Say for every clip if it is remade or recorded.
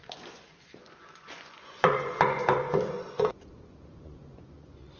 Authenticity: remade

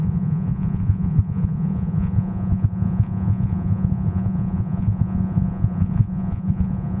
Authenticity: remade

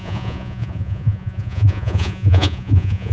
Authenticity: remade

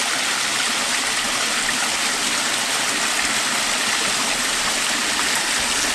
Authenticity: recorded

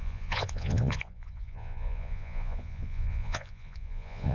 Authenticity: remade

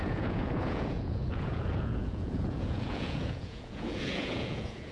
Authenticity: remade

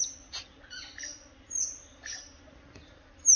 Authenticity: recorded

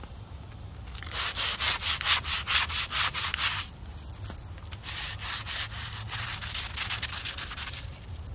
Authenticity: recorded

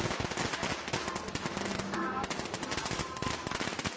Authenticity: recorded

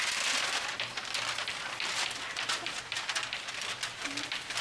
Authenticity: recorded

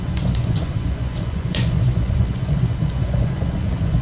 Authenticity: remade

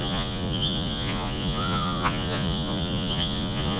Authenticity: remade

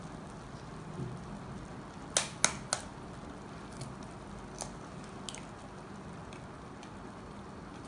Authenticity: recorded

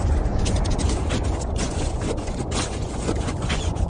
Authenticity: remade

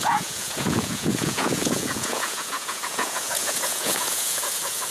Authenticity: remade